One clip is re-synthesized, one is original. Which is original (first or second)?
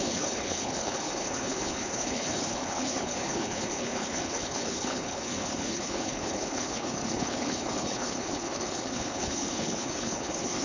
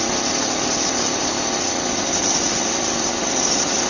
second